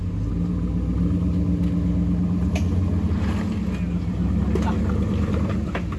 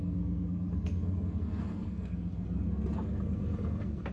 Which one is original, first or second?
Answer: first